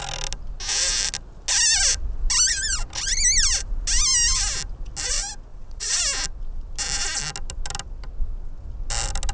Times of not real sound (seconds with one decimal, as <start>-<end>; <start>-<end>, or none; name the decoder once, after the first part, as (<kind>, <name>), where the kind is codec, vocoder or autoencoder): 5.5-6.0 (vocoder, WaveNeXt)